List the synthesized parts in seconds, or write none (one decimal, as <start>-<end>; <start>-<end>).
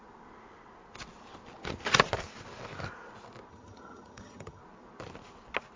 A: 3.5-4.6